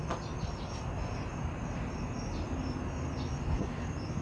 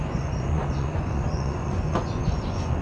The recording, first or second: first